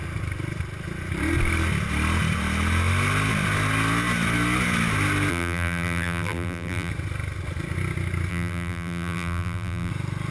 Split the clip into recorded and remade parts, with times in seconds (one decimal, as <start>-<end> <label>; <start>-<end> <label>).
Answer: 0.0-5.3 recorded; 5.3-6.9 remade; 6.9-8.3 recorded; 8.3-9.9 remade; 9.9-10.3 recorded